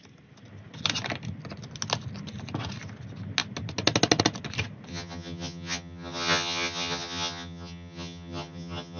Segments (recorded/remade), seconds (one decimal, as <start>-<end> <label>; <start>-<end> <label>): 0.0-4.9 recorded; 4.9-9.0 remade